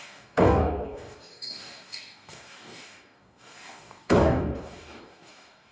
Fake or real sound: fake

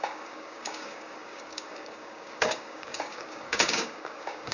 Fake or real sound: fake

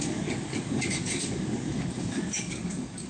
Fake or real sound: fake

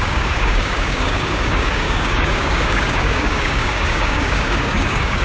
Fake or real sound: fake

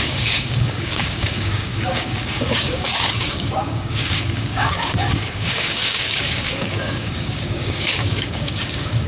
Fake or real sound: fake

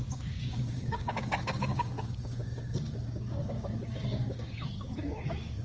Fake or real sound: fake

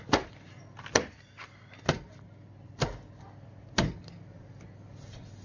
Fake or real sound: real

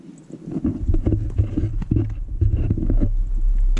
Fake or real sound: real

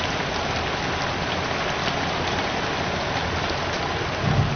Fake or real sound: real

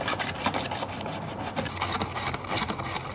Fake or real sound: real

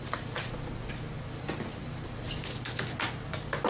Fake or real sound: real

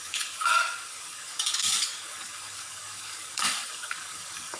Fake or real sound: fake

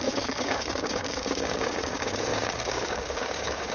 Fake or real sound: fake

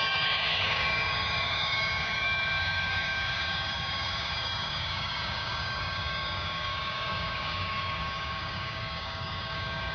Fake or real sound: fake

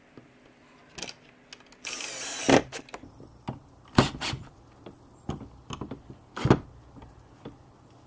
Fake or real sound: real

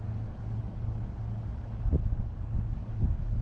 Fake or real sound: fake